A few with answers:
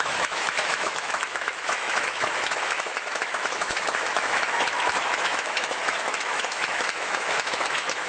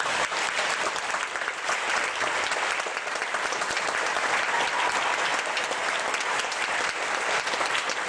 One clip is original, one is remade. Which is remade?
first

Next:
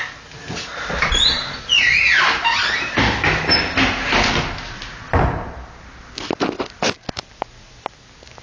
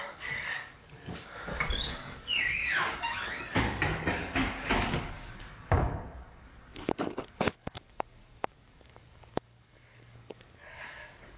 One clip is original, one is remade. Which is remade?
second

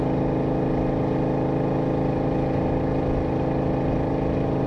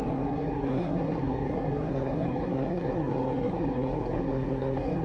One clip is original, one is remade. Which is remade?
second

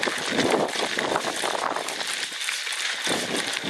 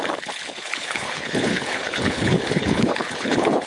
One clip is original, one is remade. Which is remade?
second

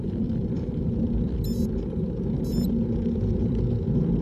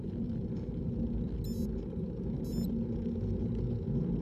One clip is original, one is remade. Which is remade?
first